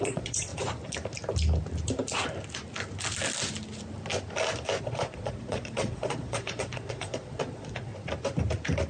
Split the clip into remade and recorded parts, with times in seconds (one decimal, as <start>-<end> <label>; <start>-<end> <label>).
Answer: 0.0-0.5 remade; 0.5-4.8 recorded; 4.8-7.9 remade; 7.9-8.9 recorded